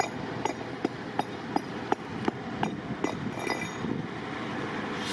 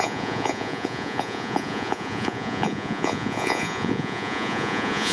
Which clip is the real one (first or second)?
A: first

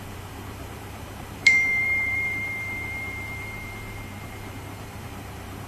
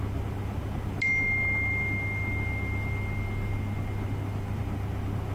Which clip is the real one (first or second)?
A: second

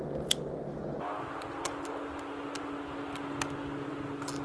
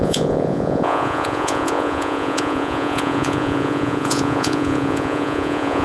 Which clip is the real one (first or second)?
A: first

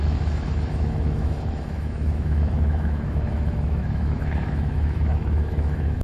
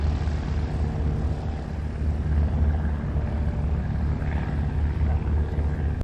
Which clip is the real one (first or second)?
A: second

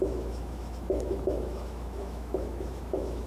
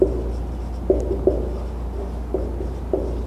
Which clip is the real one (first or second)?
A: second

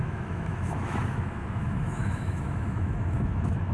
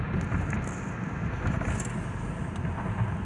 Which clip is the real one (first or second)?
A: second